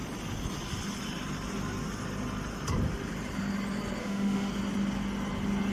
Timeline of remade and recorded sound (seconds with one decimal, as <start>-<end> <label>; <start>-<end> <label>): 0.0-4.0 recorded; 4.0-4.5 remade; 4.5-5.7 recorded